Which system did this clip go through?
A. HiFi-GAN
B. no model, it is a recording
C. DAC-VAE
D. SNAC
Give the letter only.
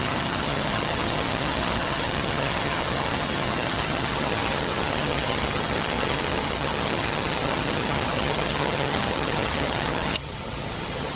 A